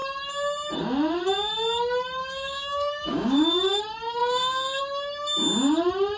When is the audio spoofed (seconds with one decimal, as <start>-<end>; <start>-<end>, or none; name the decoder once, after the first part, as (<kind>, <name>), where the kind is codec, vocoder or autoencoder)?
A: 2.2-3.8 (codec, DAC); 4.2-4.8